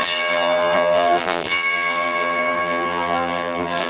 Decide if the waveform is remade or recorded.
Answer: remade